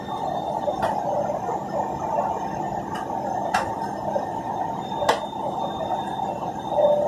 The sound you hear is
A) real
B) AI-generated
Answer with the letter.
A